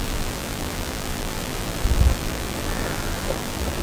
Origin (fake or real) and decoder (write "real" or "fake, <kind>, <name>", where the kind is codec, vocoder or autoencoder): fake, vocoder, BigVGAN v2